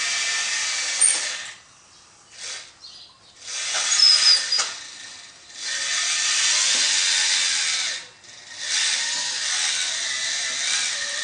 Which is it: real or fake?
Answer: real